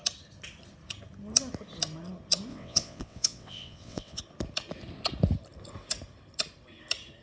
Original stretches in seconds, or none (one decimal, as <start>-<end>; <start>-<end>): 0.0-2.5; 4.2-7.2